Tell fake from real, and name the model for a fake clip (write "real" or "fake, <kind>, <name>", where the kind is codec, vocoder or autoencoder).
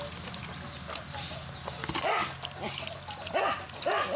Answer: real